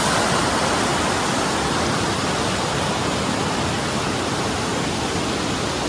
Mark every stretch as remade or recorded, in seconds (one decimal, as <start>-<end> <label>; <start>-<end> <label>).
0.0-0.9 recorded; 0.9-4.1 remade; 4.1-5.9 recorded